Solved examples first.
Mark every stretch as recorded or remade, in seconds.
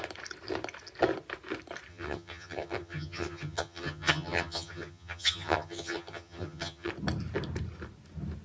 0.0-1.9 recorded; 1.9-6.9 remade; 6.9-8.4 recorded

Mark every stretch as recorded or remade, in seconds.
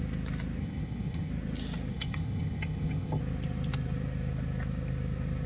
0.0-0.6 recorded; 0.6-1.3 remade; 1.3-1.9 recorded; 1.9-3.2 remade; 3.2-5.5 recorded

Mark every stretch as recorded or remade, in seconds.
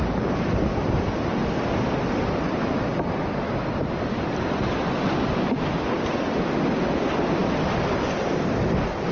0.0-9.1 recorded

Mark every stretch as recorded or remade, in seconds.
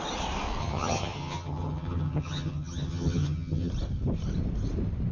0.0-0.6 recorded; 0.6-3.7 remade; 3.7-5.1 recorded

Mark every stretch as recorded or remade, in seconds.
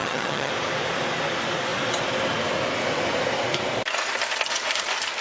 0.0-0.5 remade; 0.5-5.2 recorded